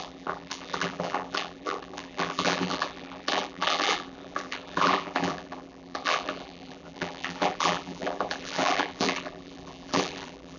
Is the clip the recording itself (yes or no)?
no